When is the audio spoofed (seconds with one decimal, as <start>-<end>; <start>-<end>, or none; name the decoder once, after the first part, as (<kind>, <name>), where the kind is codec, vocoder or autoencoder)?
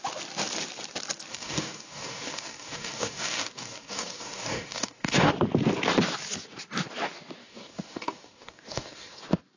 1.3-5.3 (codec, DAC); 7.4-9.2